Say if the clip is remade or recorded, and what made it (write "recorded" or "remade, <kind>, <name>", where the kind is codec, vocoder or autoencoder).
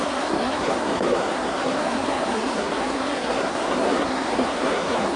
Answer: remade, codec, SNAC